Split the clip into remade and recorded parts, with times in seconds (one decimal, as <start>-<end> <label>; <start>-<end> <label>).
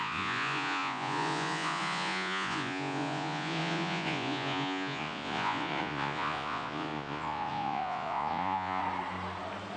0.0-8.8 remade; 8.8-9.8 recorded